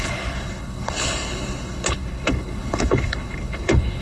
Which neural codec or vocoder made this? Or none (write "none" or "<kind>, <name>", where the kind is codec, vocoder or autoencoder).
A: codec, HILCodec